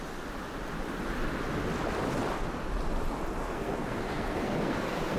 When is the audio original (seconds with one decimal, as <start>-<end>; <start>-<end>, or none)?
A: 0.0-3.4